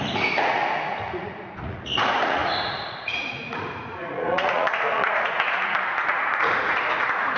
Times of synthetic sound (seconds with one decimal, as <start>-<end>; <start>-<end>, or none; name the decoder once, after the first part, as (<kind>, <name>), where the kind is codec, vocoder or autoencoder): 0.0-7.4 (vocoder, Vocos)